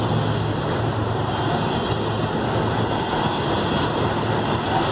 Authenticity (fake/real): real